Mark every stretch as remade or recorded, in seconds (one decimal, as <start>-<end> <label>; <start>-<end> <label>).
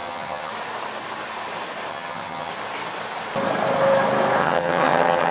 0.0-0.5 remade; 0.5-1.9 recorded; 1.9-2.5 remade; 2.5-4.4 recorded; 4.4-5.3 remade